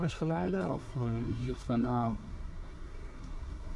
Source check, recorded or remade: remade